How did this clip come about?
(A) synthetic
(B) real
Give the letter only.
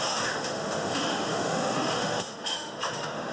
A